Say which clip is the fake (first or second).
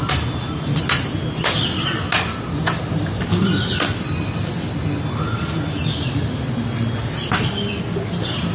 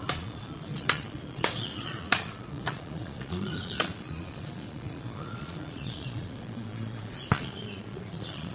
second